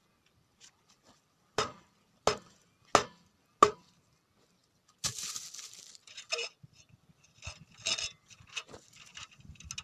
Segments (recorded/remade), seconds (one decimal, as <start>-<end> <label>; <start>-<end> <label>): 0.0-9.8 recorded